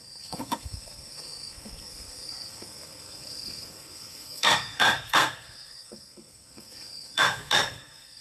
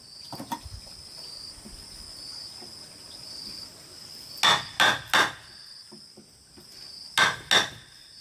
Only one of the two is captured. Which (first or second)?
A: second